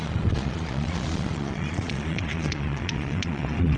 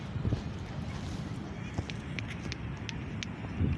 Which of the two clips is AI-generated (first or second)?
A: first